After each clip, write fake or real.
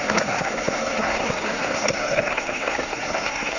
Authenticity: fake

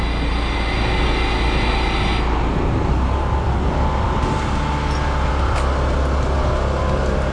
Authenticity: real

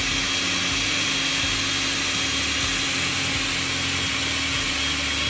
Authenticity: real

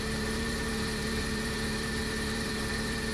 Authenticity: fake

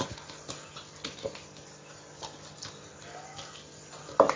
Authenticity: real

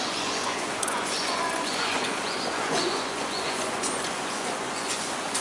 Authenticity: fake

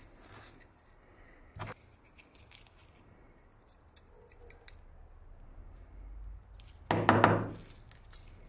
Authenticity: real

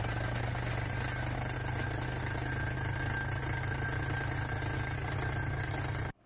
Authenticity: real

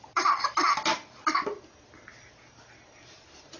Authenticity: real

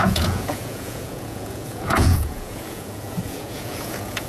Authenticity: fake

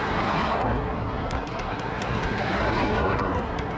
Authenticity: fake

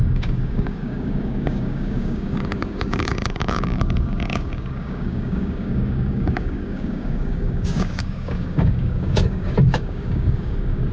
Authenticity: fake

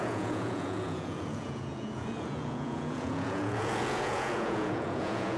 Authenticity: fake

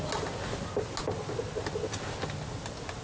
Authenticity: real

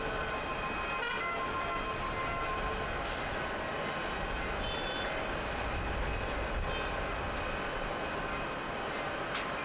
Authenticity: real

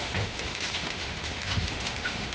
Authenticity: fake